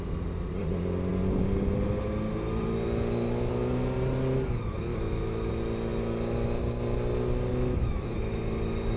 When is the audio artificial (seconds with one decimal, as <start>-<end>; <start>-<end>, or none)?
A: 4.9-5.5; 7.5-8.1